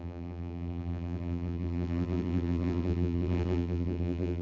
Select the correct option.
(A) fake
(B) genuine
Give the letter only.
A